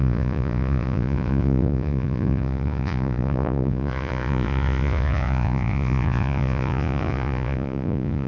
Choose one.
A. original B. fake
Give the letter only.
B